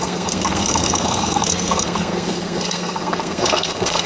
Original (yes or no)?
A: no